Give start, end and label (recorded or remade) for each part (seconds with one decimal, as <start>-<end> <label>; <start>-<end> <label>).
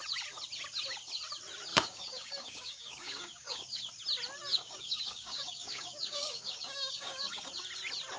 0.0-1.7 recorded; 1.7-3.8 remade; 3.8-4.5 recorded; 4.5-7.5 remade; 7.5-8.2 recorded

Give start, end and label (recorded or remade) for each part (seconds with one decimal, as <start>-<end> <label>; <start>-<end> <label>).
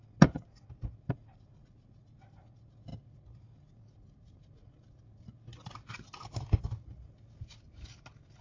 0.0-8.4 recorded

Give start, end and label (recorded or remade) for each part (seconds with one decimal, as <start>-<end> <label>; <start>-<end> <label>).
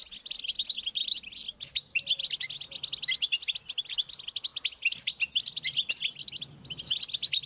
0.0-7.5 recorded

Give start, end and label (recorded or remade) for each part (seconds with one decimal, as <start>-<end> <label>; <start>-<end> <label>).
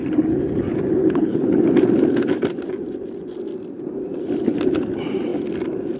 0.0-1.0 recorded; 1.0-1.6 remade; 1.6-6.0 recorded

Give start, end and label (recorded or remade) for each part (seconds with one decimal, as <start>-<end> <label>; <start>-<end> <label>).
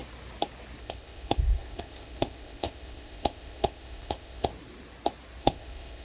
0.0-0.8 recorded; 0.8-4.5 remade; 4.5-5.4 recorded; 5.4-6.0 remade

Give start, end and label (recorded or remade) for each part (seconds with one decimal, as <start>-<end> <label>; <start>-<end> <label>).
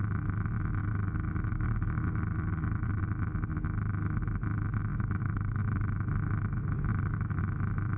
0.0-0.8 recorded; 0.8-3.0 remade; 3.0-4.9 recorded; 4.9-5.6 remade; 5.6-6.9 recorded; 6.9-7.4 remade; 7.4-8.0 recorded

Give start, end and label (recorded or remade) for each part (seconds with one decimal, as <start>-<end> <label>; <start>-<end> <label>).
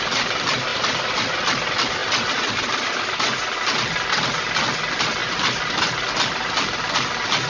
0.0-0.7 recorded; 0.7-1.3 remade; 1.3-5.2 recorded; 5.2-5.8 remade; 5.8-7.5 recorded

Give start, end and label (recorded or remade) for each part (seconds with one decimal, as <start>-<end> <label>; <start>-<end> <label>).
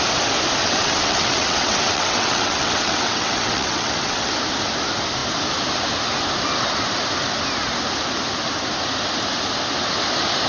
0.0-0.6 recorded; 0.6-4.3 remade; 4.3-10.5 recorded